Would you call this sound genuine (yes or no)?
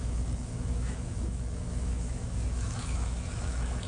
no